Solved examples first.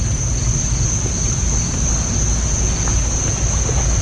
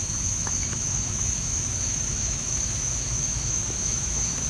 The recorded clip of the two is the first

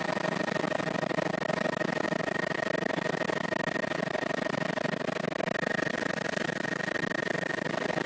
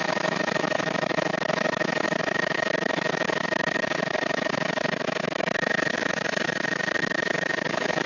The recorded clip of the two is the first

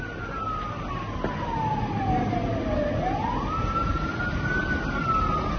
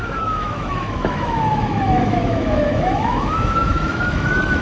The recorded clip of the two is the first